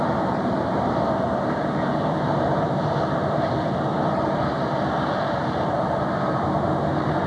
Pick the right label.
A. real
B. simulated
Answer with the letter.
B